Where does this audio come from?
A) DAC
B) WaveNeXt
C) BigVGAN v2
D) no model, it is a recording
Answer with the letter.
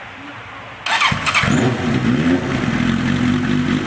D